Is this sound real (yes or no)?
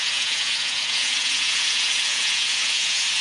no